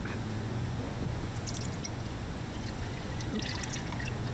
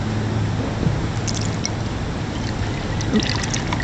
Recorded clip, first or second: second